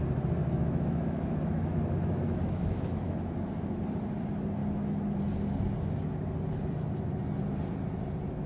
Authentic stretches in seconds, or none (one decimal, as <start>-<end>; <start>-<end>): 0.0-0.4; 3.8-4.6; 5.2-8.5